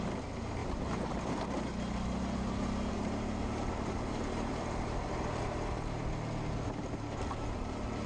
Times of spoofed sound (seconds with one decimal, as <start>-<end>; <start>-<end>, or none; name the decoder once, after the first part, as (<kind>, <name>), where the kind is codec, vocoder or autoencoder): 0.6-5.3 (vocoder, BigVGAN v2)